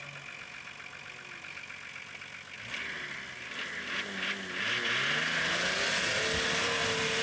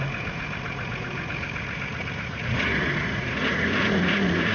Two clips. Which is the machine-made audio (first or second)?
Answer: second